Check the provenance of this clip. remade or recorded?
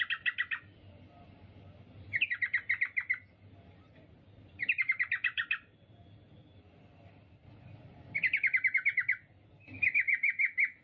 recorded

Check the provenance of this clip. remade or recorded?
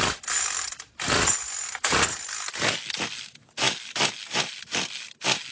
recorded